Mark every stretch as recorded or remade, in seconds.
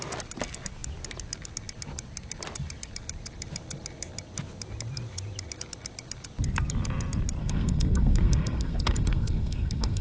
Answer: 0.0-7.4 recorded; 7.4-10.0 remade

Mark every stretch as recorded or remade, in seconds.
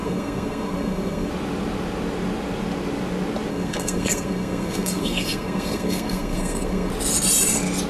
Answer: 0.0-1.3 remade; 1.3-3.5 recorded; 3.5-6.9 remade; 6.9-7.9 recorded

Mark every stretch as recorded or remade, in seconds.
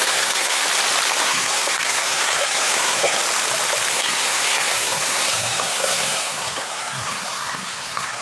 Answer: 0.0-0.6 remade; 0.6-1.2 recorded; 1.2-3.2 remade; 3.2-3.9 recorded; 3.9-8.2 remade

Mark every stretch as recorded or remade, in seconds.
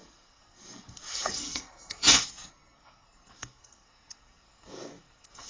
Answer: 0.0-5.5 remade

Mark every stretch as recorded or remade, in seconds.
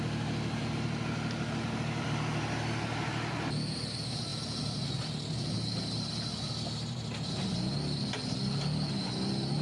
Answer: 0.0-9.6 recorded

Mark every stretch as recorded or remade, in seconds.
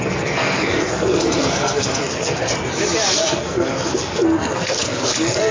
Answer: 0.0-2.5 remade; 2.5-3.1 recorded; 3.1-5.5 remade